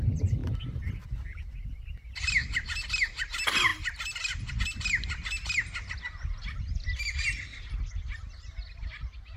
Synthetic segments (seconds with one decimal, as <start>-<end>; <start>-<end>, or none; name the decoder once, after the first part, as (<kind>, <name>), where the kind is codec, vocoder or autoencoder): none